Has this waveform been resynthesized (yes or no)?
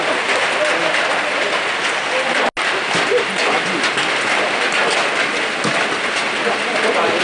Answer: no